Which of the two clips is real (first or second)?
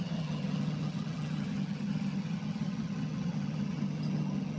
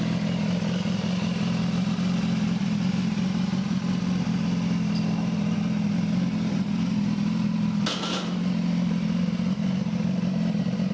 second